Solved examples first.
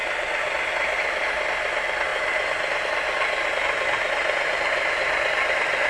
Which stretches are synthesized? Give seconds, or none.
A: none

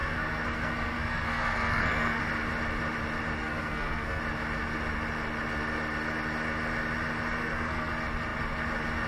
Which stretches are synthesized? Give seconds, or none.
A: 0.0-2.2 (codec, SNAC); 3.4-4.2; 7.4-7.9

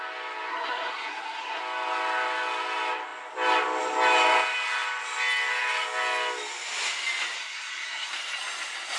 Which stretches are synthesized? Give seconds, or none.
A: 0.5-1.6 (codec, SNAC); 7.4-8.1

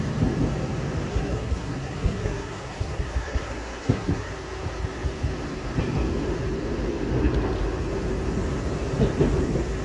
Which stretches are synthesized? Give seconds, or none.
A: 1.1-4.3 (codec, SNAC)

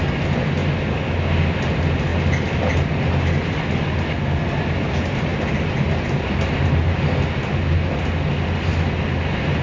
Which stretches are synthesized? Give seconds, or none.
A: none

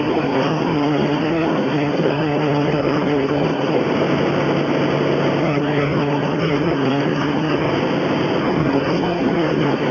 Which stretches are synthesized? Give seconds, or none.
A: 0.0-3.8 (codec, SNAC); 5.4-7.7; 8.4-9.9